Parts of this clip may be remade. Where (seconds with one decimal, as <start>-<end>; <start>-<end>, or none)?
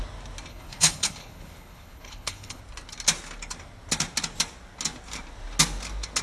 0.5-2.6